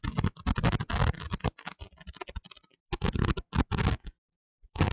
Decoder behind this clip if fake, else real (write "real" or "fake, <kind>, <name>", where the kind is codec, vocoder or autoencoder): real